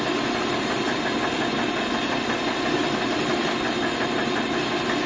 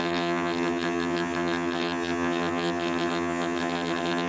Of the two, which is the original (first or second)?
first